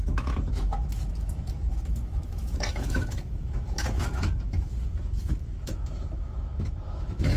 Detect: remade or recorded remade